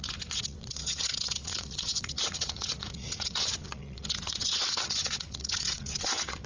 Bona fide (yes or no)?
no